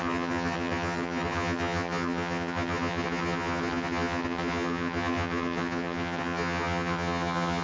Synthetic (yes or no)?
yes